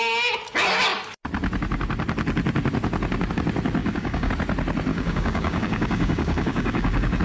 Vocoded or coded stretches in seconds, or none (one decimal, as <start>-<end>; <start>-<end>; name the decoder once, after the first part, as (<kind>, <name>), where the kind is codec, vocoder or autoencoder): 3.8-4.3 (codec, DAC); 4.9-7.2